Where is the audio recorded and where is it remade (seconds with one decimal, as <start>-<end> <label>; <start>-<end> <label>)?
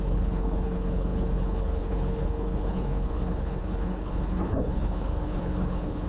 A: 0.0-6.1 remade